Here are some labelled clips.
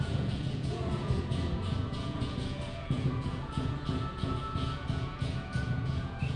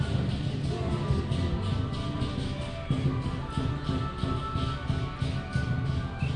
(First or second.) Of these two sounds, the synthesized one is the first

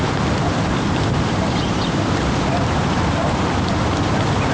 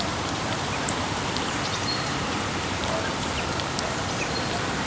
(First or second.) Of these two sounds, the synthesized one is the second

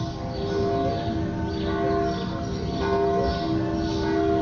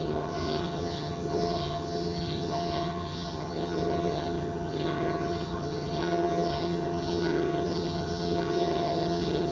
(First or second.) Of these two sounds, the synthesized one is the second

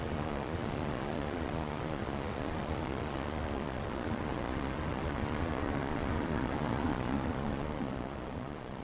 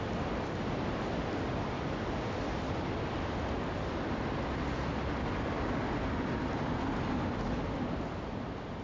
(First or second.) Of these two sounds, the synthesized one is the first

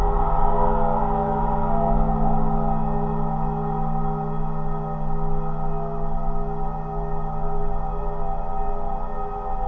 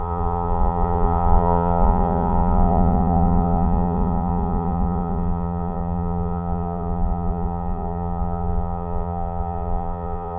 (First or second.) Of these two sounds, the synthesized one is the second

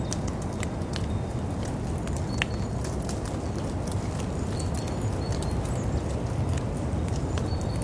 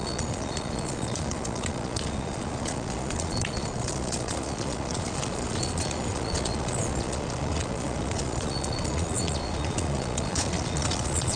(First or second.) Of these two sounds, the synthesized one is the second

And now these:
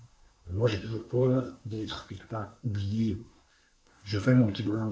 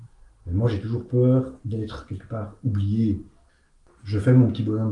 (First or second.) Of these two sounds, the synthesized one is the first